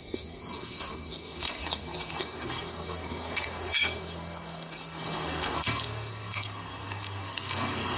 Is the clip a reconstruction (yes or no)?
yes